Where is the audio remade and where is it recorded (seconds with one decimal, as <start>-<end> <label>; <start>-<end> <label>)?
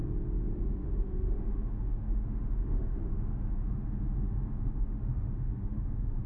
0.0-0.6 recorded; 0.6-6.3 remade